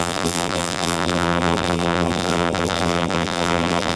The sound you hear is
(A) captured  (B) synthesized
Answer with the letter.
B